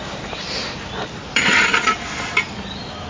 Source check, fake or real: real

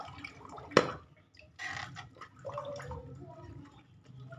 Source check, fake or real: real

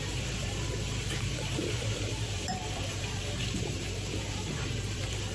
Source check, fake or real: fake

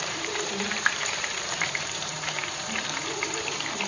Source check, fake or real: fake